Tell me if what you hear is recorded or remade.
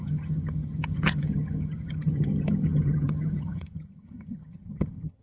remade